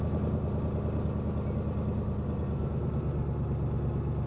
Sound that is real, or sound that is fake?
real